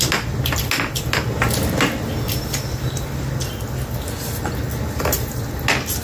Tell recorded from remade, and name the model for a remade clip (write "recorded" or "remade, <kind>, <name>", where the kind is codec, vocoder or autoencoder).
recorded